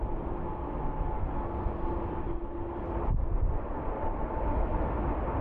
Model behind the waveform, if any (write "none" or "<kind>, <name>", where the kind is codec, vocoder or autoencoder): none